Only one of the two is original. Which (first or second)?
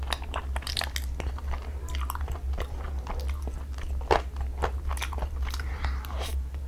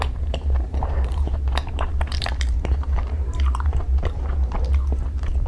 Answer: first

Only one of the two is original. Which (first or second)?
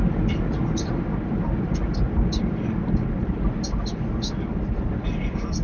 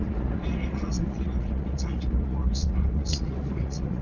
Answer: first